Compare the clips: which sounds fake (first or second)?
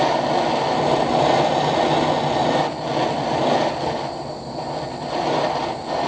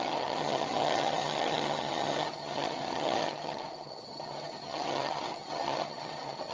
second